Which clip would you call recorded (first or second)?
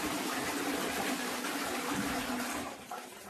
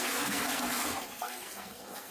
first